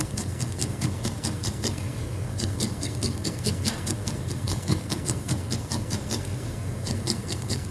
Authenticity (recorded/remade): remade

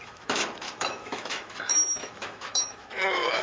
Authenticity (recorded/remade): remade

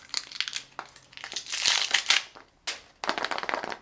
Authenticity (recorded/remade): recorded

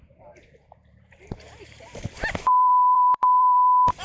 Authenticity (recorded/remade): remade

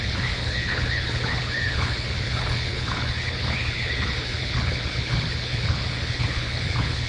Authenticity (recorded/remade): remade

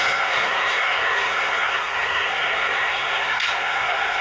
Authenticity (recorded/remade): remade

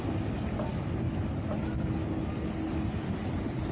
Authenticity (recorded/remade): recorded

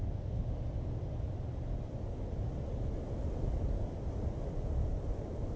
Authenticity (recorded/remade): recorded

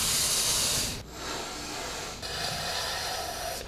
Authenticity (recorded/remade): recorded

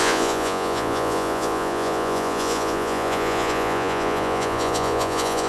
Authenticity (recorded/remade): remade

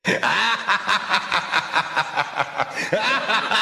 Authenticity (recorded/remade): remade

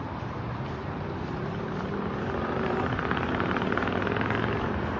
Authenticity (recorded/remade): remade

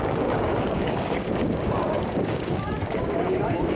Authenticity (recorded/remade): remade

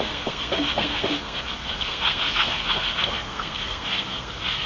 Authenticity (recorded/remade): remade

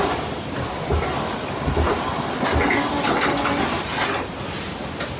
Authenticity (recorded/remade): recorded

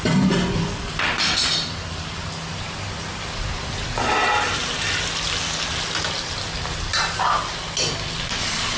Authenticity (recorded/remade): recorded